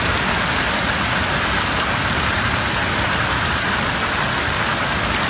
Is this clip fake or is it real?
real